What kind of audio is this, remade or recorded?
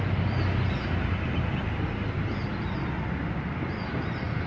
recorded